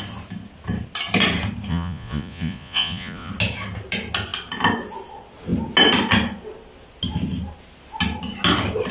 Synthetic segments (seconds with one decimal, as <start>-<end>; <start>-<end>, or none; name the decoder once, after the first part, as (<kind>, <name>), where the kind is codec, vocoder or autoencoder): 1.7-3.3 (vocoder, Vocos)